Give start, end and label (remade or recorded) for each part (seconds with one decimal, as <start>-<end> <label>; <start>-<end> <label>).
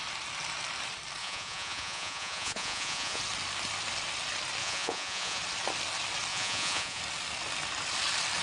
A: 0.0-1.2 recorded; 1.2-3.2 remade; 3.2-4.6 recorded; 4.6-5.4 remade; 5.4-6.3 recorded; 6.3-7.0 remade; 7.0-8.4 recorded